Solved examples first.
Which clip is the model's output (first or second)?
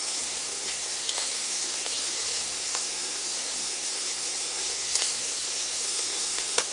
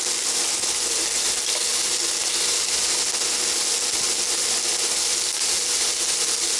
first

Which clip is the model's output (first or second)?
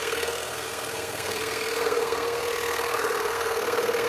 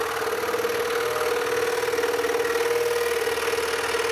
first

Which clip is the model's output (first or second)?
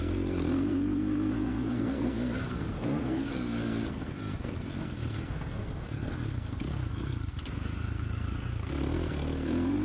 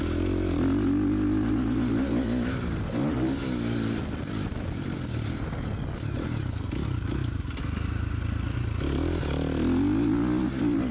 first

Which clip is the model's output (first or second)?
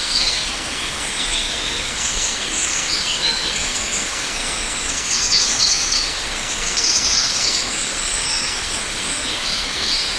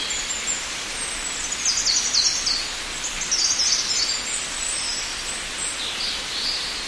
first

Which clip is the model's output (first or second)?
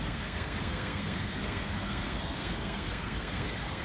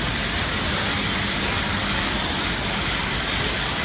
first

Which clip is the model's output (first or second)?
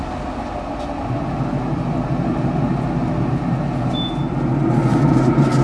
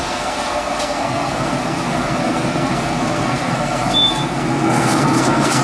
second